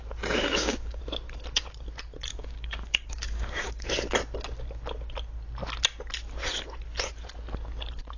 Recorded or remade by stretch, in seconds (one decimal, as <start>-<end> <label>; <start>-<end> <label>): 0.0-0.4 recorded; 0.4-1.0 remade; 1.0-2.3 recorded; 2.3-3.9 remade; 3.9-8.2 recorded